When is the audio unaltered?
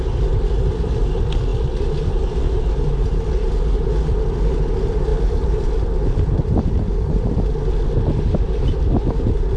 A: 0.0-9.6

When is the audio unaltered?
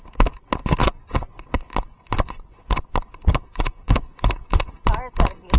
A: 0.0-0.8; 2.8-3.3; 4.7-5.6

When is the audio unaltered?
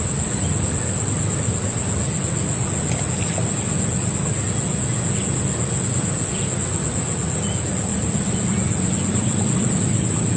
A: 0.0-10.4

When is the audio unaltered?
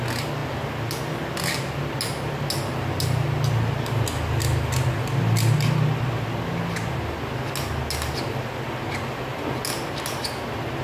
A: 0.0-10.8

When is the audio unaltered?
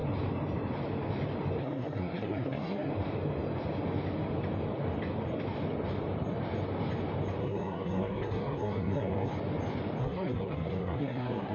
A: 0.0-1.6; 2.9-7.4; 9.3-10.0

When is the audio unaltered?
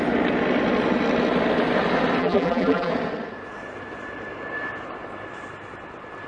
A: 0.0-2.2; 2.9-6.3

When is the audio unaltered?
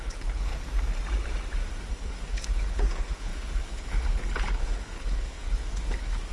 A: 0.5-1.9